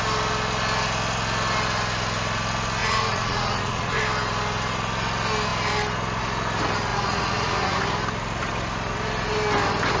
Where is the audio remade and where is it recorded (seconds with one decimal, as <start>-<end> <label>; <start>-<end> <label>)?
0.0-2.8 recorded; 2.8-4.0 remade; 4.0-6.9 recorded; 6.9-7.8 remade; 7.8-10.0 recorded